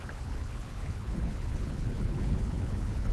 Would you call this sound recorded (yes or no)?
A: no